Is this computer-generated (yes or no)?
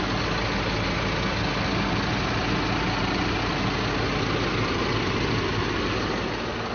no